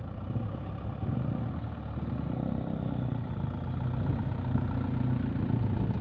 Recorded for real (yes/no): yes